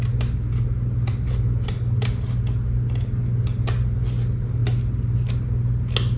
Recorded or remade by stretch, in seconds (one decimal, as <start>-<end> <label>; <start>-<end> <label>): 0.0-6.2 recorded